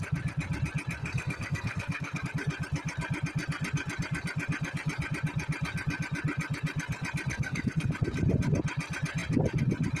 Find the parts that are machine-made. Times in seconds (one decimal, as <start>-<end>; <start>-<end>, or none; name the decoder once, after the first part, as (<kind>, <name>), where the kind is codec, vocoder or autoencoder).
1.0-2.2 (codec, SNAC); 7.3-7.9